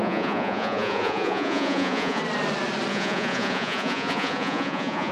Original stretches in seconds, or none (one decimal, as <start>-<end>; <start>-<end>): 2.2-2.9

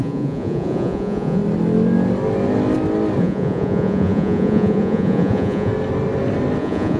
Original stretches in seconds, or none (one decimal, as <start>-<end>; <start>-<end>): 1.4-3.2; 5.7-6.6